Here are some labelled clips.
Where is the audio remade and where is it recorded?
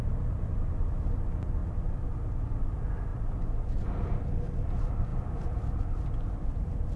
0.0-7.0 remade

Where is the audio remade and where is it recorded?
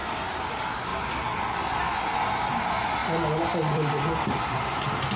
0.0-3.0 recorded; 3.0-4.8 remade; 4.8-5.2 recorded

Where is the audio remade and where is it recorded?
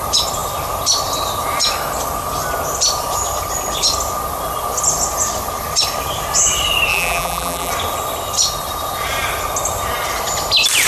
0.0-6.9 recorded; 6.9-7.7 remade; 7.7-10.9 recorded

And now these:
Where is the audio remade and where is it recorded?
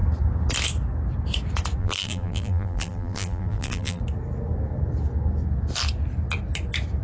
0.0-1.8 recorded; 1.8-4.0 remade; 4.0-7.0 recorded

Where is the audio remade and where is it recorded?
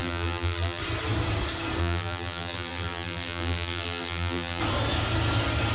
0.0-0.8 remade; 0.8-1.8 recorded; 1.8-4.6 remade; 4.6-5.7 recorded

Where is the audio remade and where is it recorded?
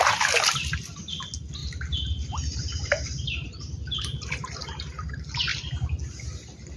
0.0-1.6 recorded; 1.6-5.1 remade; 5.1-6.8 recorded